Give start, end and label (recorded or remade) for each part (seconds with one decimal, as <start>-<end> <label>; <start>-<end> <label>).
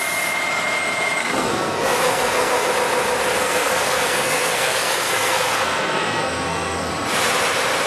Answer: 0.0-1.2 recorded; 1.2-2.7 remade; 2.7-3.4 recorded; 3.4-6.9 remade; 6.9-7.9 recorded